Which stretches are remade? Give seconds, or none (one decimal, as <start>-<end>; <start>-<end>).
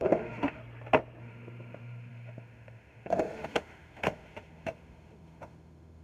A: 0.0-0.6; 1.2-6.0